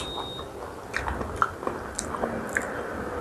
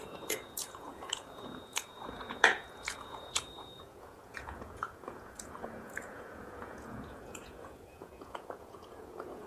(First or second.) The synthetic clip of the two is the second